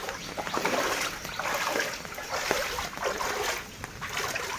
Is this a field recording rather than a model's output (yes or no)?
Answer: yes